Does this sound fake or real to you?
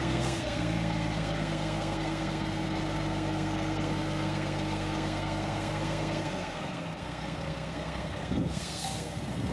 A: fake